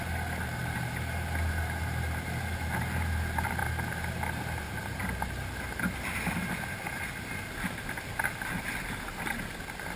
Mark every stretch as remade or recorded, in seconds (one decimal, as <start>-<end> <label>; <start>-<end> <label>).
0.0-10.0 recorded

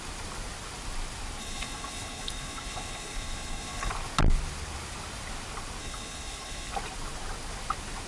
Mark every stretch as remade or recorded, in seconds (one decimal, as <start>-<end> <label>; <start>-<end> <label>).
0.0-1.4 recorded; 1.4-3.9 remade; 3.9-5.8 recorded; 5.8-6.7 remade; 6.7-8.1 recorded

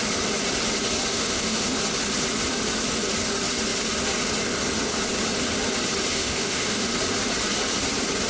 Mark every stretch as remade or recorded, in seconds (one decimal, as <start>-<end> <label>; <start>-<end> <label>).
0.0-1.1 recorded; 1.1-1.8 remade; 1.8-6.1 recorded; 6.1-6.9 remade; 6.9-8.3 recorded